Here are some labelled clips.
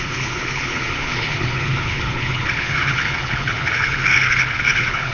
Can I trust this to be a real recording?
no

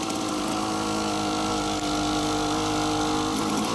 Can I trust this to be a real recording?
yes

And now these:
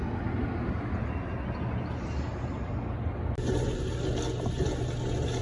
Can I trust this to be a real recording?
yes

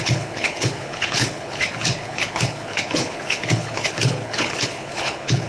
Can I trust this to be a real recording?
no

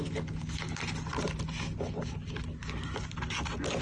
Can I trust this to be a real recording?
yes